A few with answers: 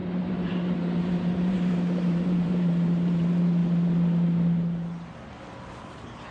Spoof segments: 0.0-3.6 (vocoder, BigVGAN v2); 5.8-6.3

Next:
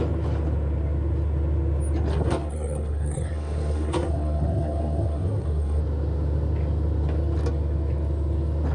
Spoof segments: 2.1-5.8 (codec, SNAC)

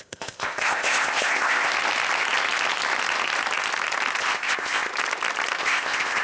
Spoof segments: 0.0-1.7 (codec, ZipCodec); 4.2-4.9; 5.6-6.2

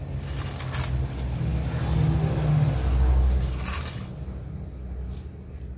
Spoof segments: none